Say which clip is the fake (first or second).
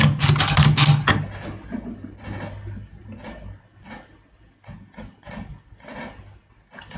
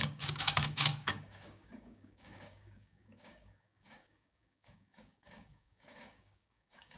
second